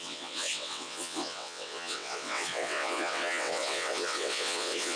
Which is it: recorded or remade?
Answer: remade